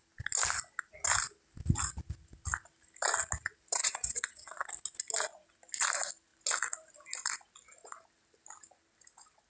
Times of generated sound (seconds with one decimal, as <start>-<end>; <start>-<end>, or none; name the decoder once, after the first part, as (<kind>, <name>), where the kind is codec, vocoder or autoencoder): 3.8-4.7 (vocoder, WaveNeXt)